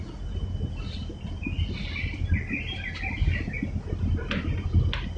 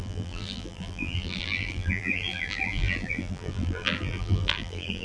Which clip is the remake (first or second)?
second